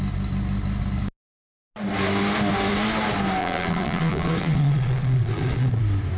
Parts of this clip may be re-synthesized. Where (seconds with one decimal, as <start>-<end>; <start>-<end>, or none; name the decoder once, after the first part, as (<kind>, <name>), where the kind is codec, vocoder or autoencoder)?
3.4-5.8 (vocoder, Vocos)